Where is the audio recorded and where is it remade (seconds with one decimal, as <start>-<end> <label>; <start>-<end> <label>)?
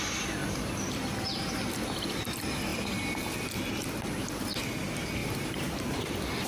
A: 0.0-5.2 recorded; 5.2-6.0 remade; 6.0-6.5 recorded